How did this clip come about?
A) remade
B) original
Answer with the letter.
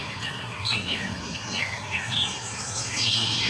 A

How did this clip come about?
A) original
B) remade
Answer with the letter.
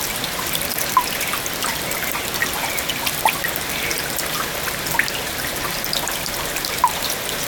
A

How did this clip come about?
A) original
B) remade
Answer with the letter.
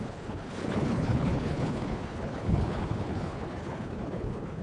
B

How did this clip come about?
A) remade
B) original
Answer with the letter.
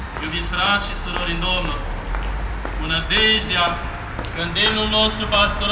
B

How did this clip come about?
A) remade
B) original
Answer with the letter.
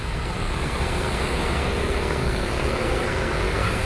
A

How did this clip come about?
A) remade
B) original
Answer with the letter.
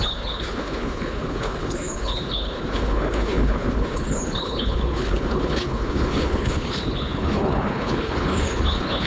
A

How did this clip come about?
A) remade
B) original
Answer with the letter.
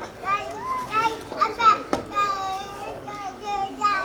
A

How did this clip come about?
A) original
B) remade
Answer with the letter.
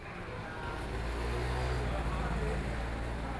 A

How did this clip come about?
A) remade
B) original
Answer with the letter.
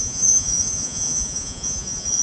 A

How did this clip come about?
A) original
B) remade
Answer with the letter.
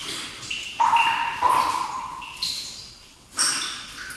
A